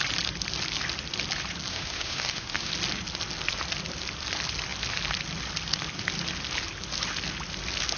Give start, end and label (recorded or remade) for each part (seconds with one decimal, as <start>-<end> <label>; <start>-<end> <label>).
0.0-1.7 recorded; 1.7-2.7 remade; 2.7-8.0 recorded